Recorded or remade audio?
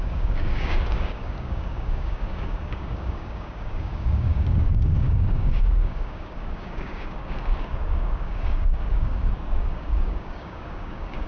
remade